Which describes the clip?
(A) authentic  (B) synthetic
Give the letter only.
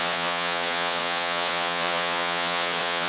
B